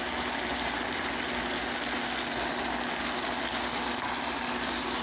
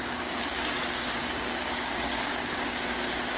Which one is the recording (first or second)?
first